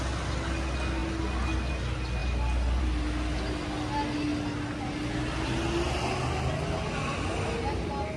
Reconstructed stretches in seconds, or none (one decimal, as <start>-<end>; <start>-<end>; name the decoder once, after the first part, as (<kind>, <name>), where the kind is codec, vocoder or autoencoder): none